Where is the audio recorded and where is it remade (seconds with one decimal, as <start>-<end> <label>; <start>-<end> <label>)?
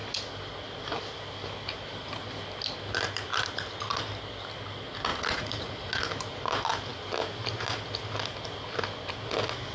0.0-5.1 recorded; 5.1-6.0 remade; 6.0-9.7 recorded